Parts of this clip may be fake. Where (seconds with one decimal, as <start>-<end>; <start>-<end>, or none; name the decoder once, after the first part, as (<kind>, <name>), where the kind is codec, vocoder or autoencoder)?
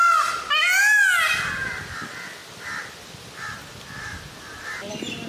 none